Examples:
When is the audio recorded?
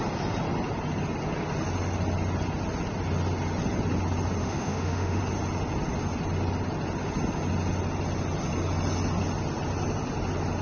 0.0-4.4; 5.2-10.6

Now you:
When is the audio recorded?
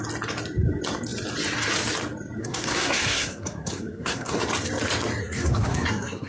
0.0-2.4; 4.4-5.2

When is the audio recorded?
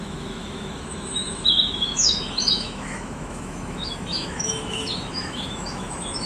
none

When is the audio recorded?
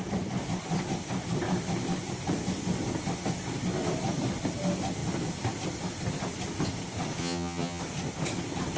0.0-7.2; 7.8-8.8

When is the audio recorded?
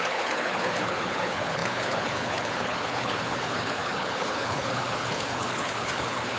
none